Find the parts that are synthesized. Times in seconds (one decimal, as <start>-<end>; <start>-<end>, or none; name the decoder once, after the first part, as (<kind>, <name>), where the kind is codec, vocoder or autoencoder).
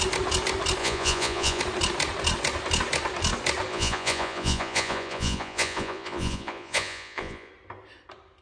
0.8-1.6 (vocoder, Vocos); 3.7-7.5